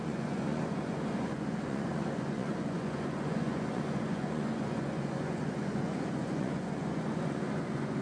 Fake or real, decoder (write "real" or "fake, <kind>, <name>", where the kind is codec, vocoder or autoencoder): fake, vocoder, Vocos